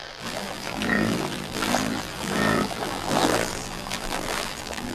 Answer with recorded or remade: remade